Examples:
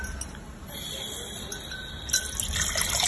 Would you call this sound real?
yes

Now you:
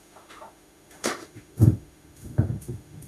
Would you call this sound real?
no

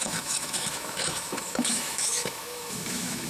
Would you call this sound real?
no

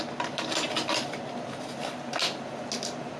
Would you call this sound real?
yes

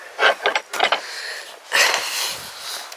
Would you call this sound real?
yes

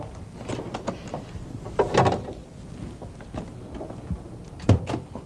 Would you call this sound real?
yes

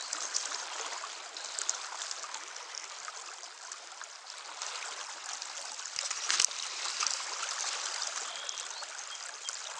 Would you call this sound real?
yes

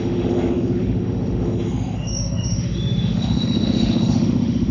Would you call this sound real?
no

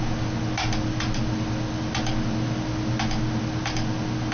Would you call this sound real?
yes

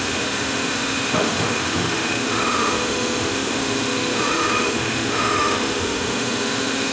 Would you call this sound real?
no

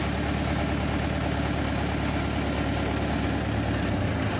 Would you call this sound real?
yes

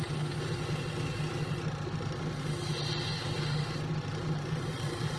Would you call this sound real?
yes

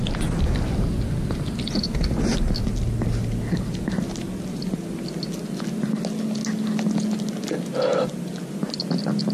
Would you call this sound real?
yes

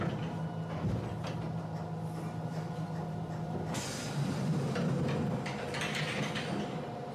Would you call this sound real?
yes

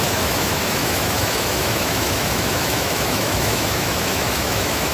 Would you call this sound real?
no